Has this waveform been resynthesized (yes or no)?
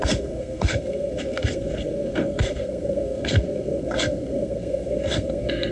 yes